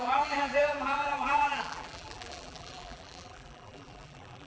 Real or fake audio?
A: fake